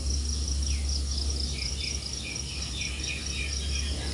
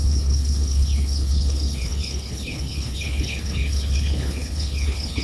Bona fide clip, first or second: first